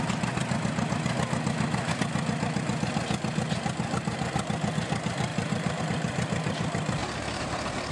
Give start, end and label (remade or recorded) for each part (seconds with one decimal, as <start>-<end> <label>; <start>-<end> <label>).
0.0-5.3 recorded; 5.3-5.8 remade; 5.8-7.0 recorded; 7.0-7.9 remade